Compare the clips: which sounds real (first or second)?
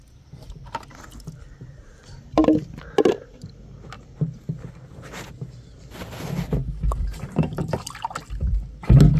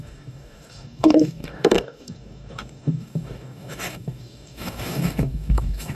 first